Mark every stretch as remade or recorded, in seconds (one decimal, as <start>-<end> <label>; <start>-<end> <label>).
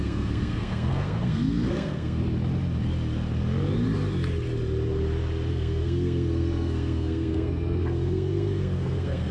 0.0-2.2 remade; 2.2-5.5 recorded; 5.5-9.3 remade